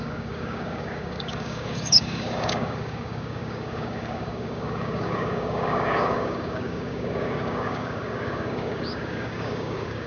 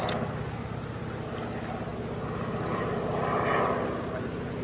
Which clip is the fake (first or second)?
first